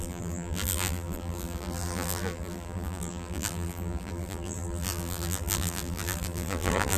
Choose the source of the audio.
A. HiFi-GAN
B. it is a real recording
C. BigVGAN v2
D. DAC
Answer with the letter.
C